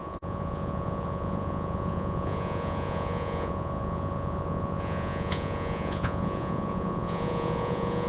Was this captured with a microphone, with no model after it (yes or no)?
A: no